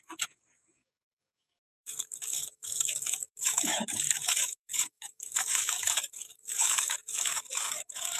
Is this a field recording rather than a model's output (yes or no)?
no